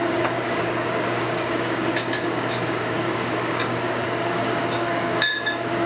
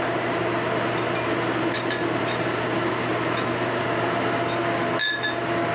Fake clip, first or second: first